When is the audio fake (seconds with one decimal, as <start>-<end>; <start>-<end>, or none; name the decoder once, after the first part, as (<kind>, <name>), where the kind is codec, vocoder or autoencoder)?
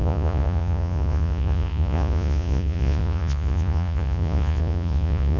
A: 0.0-5.4 (vocoder, Vocos)